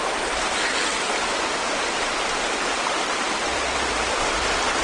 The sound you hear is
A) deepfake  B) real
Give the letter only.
B